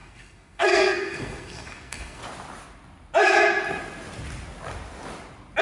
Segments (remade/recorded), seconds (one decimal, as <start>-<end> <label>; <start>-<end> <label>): 0.0-2.2 remade; 2.2-5.6 recorded